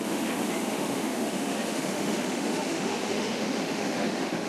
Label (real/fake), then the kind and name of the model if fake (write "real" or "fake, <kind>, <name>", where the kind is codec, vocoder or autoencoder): fake, autoencoder, DAC-VAE